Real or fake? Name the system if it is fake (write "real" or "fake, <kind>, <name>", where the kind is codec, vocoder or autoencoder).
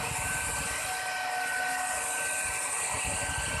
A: real